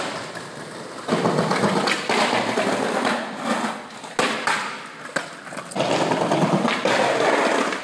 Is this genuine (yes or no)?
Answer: yes